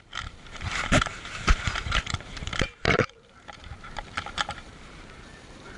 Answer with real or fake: fake